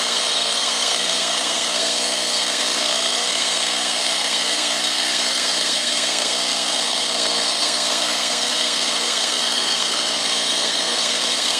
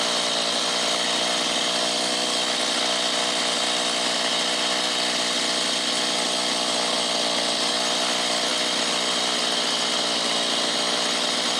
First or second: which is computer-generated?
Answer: first